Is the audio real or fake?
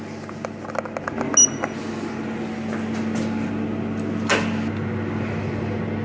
real